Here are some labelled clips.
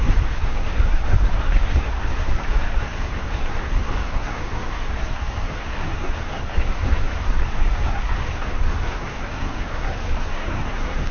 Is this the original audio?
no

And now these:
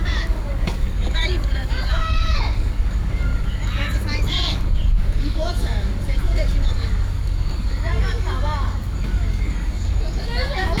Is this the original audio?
no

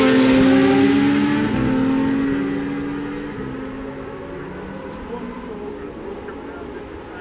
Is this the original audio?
yes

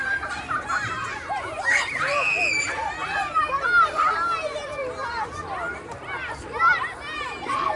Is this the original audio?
yes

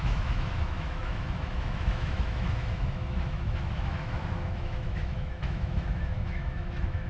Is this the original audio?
no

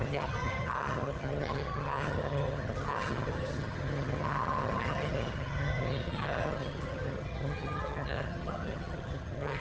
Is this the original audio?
no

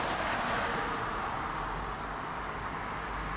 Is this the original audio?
yes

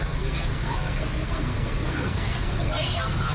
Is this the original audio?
no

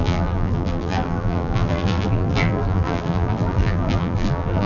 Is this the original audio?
no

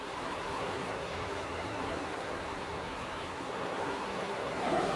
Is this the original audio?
no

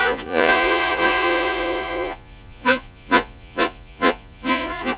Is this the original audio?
no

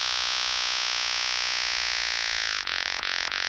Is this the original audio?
no